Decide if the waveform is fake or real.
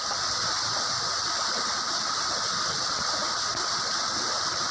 real